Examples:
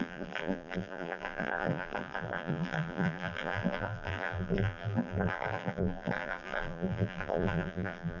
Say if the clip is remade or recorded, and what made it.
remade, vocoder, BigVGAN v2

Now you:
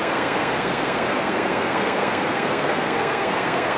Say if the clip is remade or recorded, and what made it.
remade, codec, SNAC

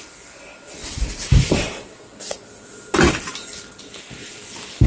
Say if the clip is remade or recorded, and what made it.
remade, vocoder, BigVGAN v2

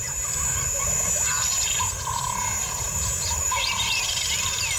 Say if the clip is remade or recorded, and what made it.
remade, vocoder, BigVGAN v2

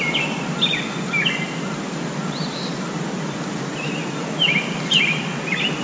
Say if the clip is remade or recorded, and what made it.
recorded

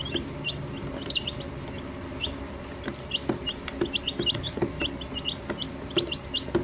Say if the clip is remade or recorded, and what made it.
recorded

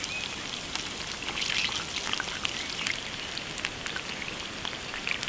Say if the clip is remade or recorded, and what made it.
recorded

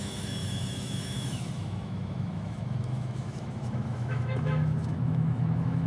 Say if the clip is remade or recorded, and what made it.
remade, autoencoder, DAC-VAE